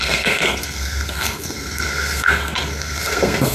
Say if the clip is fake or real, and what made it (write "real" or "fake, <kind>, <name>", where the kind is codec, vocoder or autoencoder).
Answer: fake, codec, SNAC